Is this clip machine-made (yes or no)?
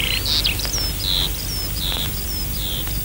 no